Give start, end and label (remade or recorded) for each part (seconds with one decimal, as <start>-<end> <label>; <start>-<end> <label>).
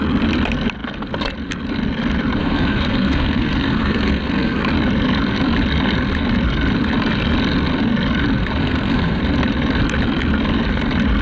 0.0-2.4 recorded; 2.4-4.6 remade; 4.6-8.6 recorded; 8.6-9.2 remade; 9.2-11.2 recorded